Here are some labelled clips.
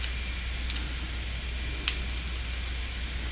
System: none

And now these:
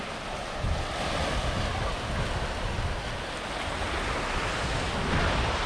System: none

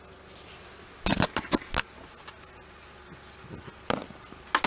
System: none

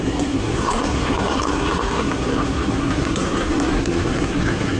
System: codec, SNAC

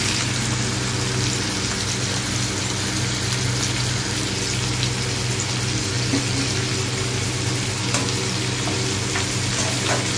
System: none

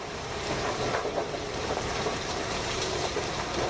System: vocoder, BigVGAN v2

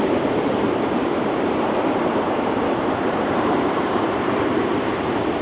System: vocoder, BigVGAN v2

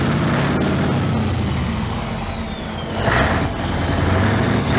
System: none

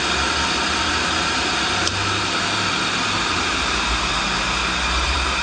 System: vocoder, BigVGAN v2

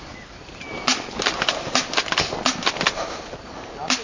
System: none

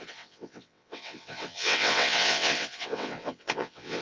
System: vocoder, WaveNeXt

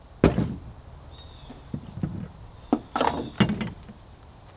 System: none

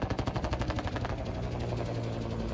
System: none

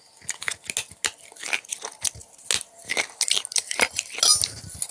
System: none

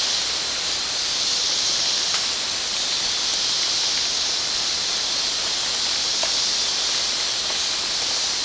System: none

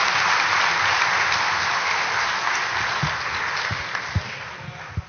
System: none